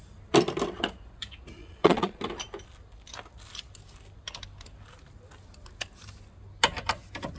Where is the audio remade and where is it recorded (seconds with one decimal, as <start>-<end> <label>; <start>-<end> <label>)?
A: 0.0-1.6 recorded; 1.6-2.2 remade; 2.2-7.4 recorded